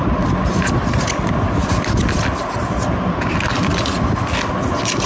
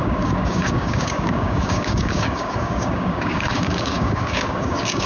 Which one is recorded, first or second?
first